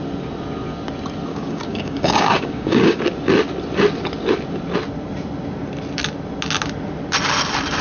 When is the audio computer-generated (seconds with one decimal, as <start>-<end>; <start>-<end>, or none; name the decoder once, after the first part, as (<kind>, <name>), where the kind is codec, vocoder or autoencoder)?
1.3-3.0 (codec, DAC)